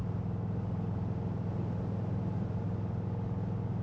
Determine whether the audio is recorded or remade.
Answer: recorded